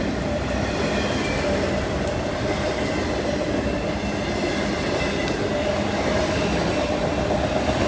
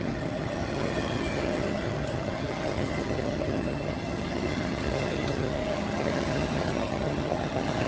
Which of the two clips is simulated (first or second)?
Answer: second